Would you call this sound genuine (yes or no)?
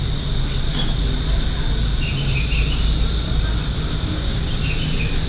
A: yes